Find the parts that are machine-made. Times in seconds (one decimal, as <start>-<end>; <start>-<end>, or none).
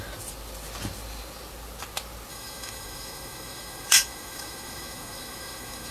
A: 2.3-5.9